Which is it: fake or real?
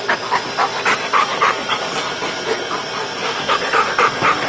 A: fake